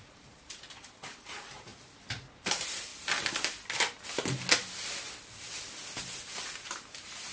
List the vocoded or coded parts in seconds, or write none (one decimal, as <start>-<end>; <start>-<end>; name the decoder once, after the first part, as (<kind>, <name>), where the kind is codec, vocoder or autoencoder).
0.0-1.7 (vocoder, BigVGAN v2); 2.4-2.9; 6.3-7.3